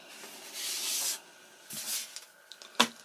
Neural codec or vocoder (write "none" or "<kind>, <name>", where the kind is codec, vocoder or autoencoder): none